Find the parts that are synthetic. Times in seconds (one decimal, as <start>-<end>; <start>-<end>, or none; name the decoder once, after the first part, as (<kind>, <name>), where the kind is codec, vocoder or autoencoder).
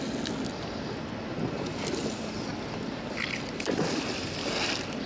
none